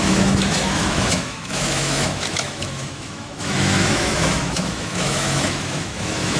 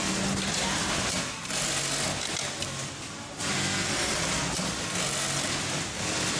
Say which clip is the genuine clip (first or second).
second